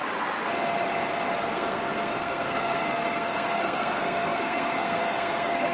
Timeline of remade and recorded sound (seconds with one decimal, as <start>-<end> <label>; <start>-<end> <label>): 0.0-1.3 recorded; 1.3-5.7 remade